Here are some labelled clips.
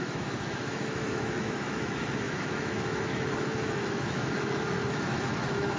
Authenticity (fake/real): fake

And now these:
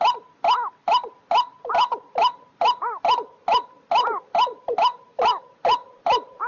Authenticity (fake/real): real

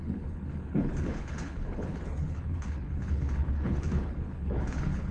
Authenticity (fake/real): fake